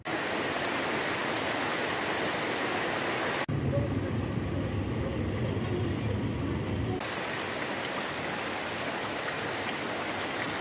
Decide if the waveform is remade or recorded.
recorded